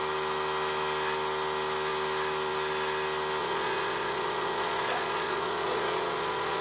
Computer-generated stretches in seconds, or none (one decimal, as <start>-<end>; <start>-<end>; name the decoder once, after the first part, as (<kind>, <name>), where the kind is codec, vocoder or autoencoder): 3.4-6.6 (vocoder, Vocos)

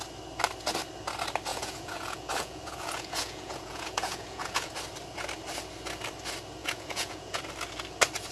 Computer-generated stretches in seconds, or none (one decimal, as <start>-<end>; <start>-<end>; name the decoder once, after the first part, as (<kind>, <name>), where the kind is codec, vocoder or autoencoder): 1.5-4.7 (vocoder, Vocos); 6.6-7.4

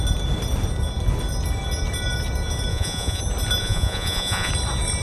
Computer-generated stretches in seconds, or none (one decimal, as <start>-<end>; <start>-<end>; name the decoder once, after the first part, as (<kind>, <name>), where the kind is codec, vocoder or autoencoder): 2.7-3.2 (vocoder, Vocos); 3.6-4.5

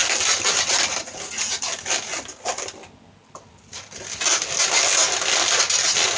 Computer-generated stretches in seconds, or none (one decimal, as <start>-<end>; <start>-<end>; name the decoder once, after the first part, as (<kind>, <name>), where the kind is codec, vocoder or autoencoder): none

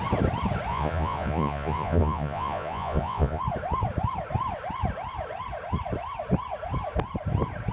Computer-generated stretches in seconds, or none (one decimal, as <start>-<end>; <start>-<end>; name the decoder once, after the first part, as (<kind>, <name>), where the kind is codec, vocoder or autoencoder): 0.7-3.4 (vocoder, Vocos)

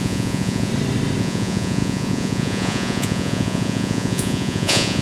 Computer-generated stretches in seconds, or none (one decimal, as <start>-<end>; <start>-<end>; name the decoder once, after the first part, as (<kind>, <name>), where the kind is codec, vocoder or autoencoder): 0.0-0.7 (vocoder, Vocos); 1.2-5.0

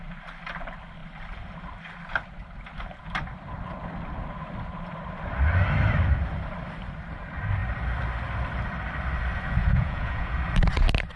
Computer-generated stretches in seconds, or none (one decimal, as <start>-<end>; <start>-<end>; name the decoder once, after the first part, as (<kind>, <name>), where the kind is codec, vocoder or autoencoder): 9.6-10.4 (vocoder, Vocos)